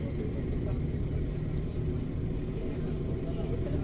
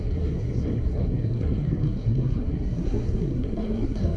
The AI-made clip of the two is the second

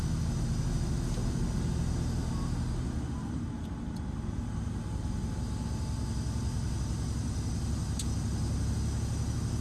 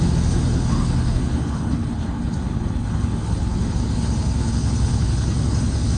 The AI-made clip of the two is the second